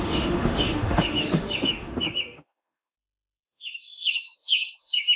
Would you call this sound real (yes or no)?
no